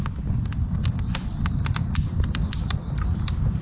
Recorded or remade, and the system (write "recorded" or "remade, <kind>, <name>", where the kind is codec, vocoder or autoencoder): recorded